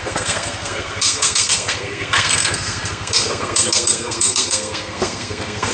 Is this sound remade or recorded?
remade